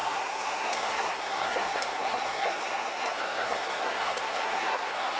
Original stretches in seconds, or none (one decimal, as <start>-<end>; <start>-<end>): none